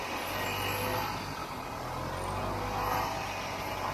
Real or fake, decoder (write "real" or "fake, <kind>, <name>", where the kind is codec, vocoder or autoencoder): real